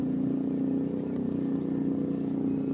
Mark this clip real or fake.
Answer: real